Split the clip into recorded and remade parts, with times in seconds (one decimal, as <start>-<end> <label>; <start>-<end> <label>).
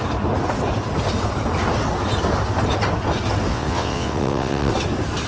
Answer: 0.0-3.5 recorded; 3.5-4.7 remade; 4.7-5.3 recorded